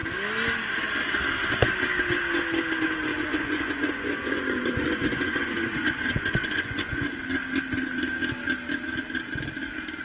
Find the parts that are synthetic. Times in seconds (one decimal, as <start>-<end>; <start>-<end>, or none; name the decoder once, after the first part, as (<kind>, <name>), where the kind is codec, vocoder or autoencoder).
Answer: 3.1-7.2 (vocoder, Vocos)